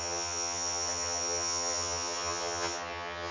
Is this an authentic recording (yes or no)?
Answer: no